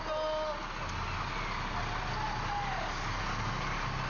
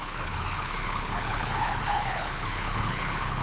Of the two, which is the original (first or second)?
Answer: first